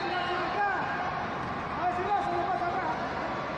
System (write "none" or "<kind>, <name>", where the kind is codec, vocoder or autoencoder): none